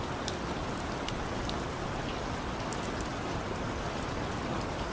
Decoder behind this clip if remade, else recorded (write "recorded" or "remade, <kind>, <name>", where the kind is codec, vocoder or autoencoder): recorded